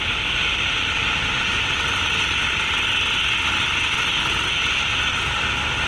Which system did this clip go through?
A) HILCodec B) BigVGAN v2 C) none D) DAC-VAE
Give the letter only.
C